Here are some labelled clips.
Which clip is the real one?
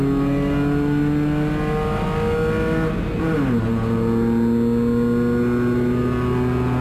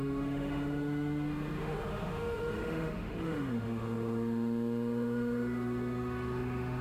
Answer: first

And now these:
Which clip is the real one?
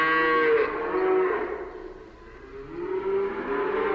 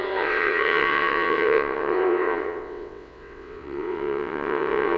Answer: first